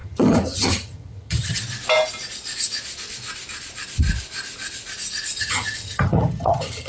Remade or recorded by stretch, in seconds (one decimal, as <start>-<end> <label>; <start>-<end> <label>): 0.0-1.6 remade; 1.6-5.4 recorded; 5.4-6.9 remade